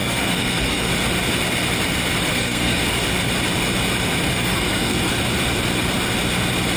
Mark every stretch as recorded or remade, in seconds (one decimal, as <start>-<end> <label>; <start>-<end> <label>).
0.0-0.9 remade; 0.9-2.2 recorded; 2.2-2.8 remade; 2.8-4.3 recorded; 4.3-5.1 remade; 5.1-6.8 recorded